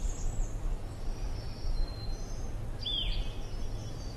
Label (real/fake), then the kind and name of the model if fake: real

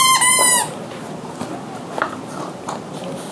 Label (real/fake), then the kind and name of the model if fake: real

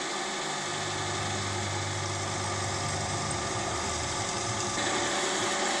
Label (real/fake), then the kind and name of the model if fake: real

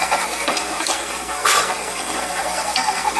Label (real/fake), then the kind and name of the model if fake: fake, codec, SNAC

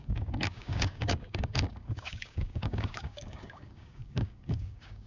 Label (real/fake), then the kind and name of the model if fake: fake, codec, DAC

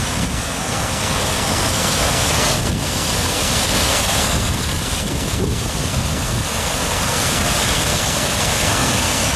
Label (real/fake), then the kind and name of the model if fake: fake, codec, SNAC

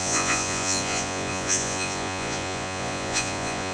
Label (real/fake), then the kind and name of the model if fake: fake, vocoder, Vocos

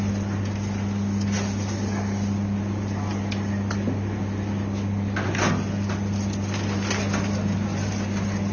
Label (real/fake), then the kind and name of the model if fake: real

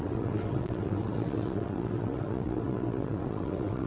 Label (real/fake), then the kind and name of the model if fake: fake, vocoder, WaveNeXt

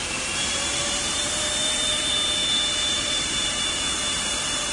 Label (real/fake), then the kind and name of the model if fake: fake, vocoder, BigVGAN v2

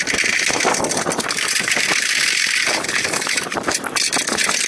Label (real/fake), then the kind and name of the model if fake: real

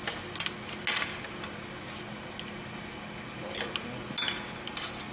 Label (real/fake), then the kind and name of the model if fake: real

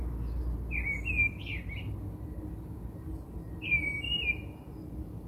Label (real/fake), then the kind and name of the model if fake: real